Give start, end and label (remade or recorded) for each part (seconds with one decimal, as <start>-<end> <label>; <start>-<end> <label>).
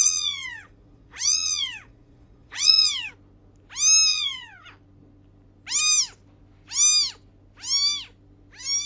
0.0-3.1 remade; 3.1-4.1 recorded; 4.1-4.7 remade; 4.7-8.9 recorded